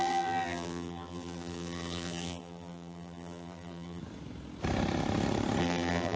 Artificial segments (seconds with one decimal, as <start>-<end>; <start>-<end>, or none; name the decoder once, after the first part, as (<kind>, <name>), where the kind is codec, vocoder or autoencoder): 0.0-4.0 (vocoder, BigVGAN v2); 5.6-6.2